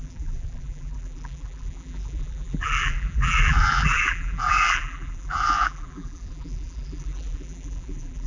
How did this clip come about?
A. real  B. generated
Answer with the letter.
B